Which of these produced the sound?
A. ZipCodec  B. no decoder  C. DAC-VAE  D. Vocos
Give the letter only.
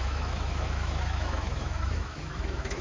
C